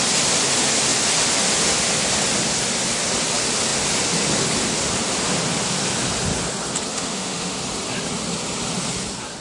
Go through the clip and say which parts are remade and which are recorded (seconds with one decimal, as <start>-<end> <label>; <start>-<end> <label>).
0.0-6.9 recorded; 6.9-7.6 remade; 7.6-9.4 recorded